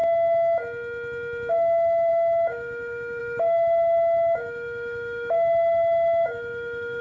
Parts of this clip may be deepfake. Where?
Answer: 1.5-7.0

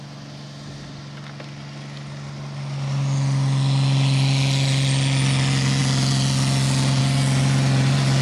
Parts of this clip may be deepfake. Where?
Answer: none